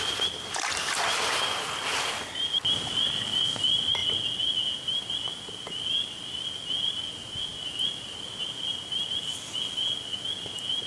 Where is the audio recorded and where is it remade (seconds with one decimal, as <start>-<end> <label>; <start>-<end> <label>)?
0.0-10.9 recorded